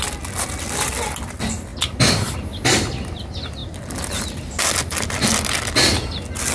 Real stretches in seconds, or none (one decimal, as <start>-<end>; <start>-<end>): 0.0-6.5